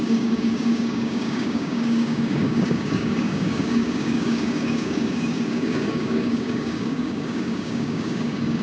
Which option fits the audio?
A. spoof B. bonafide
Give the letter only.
A